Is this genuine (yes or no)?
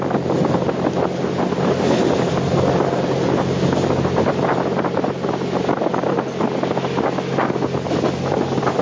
yes